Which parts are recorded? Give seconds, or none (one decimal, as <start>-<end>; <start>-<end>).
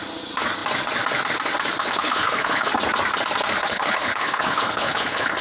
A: 0.0-1.8; 2.7-3.6